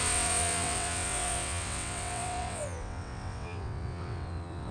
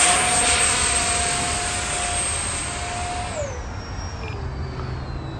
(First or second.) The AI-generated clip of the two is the first